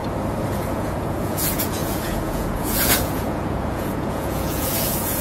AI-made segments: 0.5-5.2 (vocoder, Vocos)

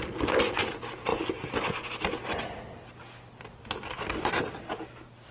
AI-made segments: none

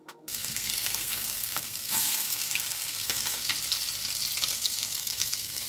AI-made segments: 0.0-3.5 (codec, SNAC); 4.4-5.7

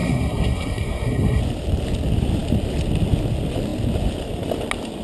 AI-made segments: 0.0-1.4 (codec, SNAC)

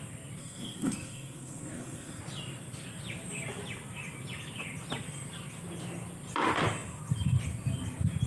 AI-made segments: 0.4-2.2 (codec, SNAC)